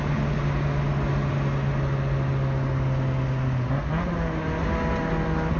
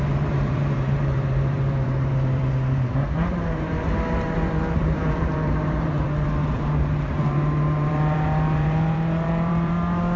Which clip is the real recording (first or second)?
first